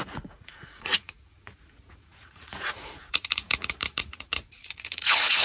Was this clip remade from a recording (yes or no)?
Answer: yes